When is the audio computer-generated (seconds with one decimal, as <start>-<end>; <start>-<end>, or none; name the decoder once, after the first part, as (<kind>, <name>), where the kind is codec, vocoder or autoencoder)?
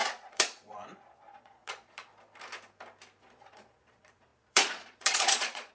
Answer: 0.0-2.1 (vocoder, Vocos); 3.2-5.7